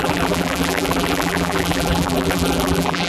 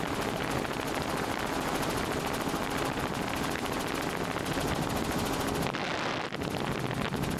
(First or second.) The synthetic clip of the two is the first